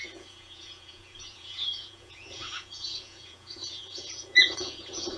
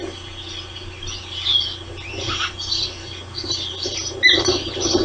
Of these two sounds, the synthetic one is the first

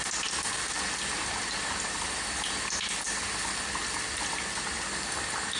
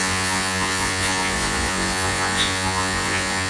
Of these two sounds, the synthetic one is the second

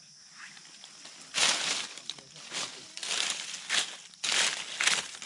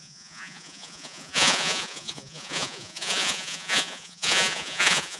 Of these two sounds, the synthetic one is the second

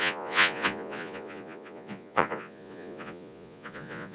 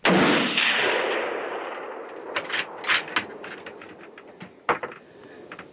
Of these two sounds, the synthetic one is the first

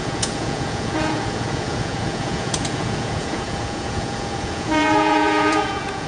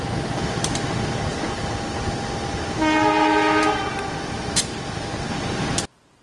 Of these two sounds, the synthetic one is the first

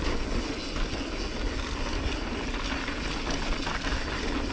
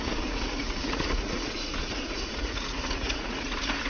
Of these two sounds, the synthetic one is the second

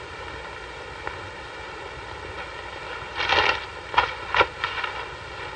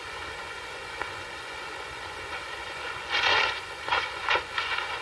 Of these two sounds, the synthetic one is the second